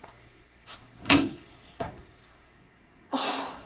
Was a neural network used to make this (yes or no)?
yes